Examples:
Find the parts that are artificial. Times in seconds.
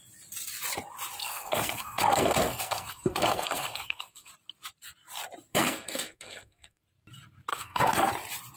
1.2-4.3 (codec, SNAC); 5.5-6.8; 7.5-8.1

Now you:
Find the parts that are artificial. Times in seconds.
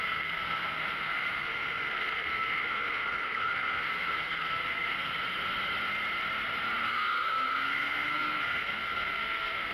0.0-5.1 (codec, SNAC); 6.8-9.7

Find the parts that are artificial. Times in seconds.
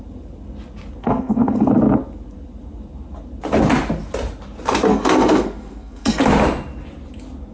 1.0-1.7 (codec, SNAC); 4.9-6.2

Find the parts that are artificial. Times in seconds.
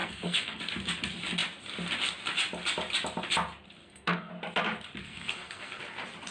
0.0-0.6 (codec, SNAC); 3.8-4.3; 5.0-5.8